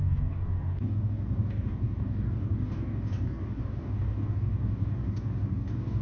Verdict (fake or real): fake